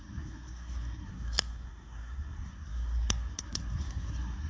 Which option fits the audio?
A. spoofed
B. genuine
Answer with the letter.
A